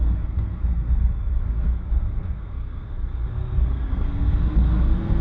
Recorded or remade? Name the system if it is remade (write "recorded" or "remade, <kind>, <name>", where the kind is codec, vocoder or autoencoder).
remade, codec, SNAC